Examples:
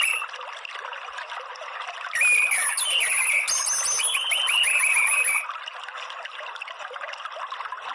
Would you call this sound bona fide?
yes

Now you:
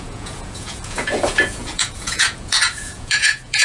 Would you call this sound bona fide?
no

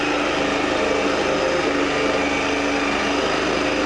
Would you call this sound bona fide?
yes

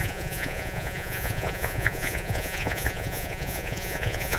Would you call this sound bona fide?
no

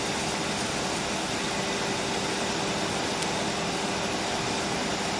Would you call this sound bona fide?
yes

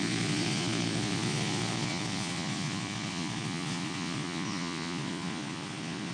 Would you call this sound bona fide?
no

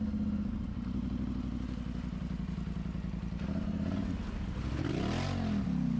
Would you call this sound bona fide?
yes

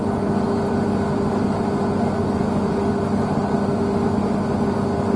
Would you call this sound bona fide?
yes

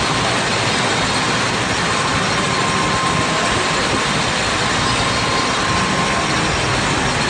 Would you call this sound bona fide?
yes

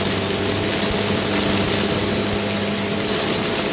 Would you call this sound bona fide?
yes